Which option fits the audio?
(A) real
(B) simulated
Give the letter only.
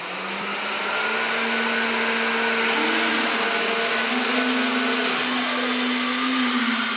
A